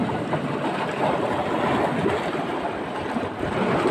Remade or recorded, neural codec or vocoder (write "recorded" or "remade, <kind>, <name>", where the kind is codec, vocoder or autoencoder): recorded